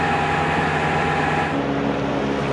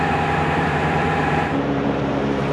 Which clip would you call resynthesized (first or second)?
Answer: second